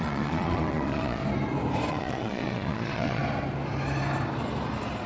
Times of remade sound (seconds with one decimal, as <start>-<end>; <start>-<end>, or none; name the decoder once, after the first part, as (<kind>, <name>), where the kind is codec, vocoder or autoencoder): 0.0-1.2 (vocoder, Vocos); 1.9-3.2